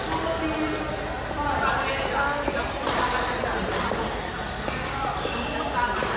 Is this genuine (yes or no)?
yes